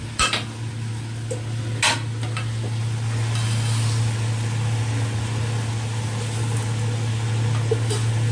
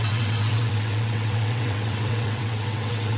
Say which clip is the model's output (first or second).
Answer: second